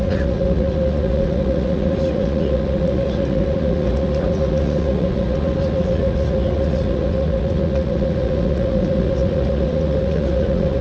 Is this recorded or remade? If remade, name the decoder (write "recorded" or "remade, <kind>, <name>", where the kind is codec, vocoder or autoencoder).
remade, vocoder, Vocos